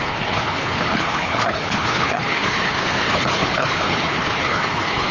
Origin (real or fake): fake